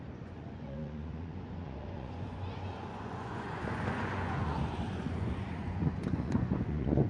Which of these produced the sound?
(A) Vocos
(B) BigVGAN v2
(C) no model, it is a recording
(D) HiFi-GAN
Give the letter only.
A